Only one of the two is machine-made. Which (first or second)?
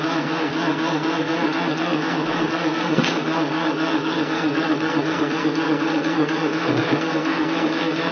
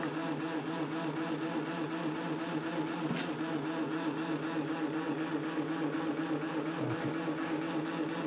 first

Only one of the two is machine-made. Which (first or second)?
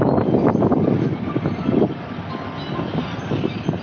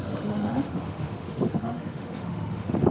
second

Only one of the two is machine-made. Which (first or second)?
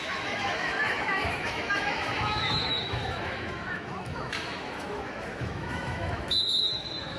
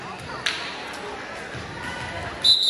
first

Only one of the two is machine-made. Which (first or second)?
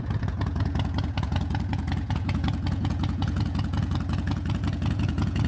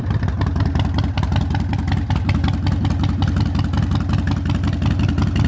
first